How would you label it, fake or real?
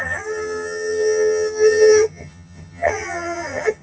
fake